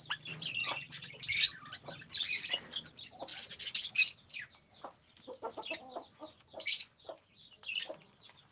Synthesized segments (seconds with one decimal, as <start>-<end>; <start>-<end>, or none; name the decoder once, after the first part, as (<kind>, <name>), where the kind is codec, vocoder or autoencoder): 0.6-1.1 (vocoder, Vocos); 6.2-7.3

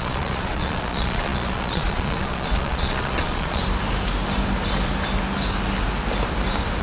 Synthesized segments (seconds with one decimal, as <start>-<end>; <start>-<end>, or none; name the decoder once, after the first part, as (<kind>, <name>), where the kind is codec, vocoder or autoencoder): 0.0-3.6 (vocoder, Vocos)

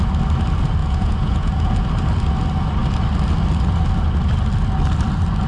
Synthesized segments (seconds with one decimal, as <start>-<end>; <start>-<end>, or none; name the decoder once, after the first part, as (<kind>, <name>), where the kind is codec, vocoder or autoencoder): 0.8-1.7 (vocoder, Vocos)